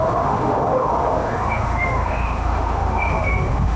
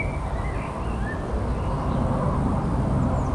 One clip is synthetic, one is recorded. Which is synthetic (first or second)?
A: first